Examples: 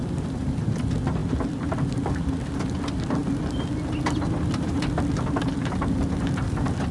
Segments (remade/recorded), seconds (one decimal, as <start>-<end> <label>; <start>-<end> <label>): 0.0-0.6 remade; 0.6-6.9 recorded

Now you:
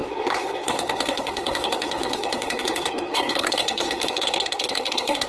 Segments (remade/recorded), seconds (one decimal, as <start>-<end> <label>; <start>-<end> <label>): 0.0-5.3 remade

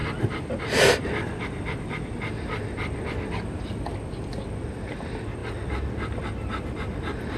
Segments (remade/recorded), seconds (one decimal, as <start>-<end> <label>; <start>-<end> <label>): 0.0-7.4 recorded

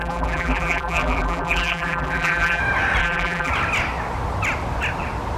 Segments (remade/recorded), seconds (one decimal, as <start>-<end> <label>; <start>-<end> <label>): 0.0-2.6 remade; 2.6-3.0 recorded; 3.0-3.5 remade; 3.5-5.4 recorded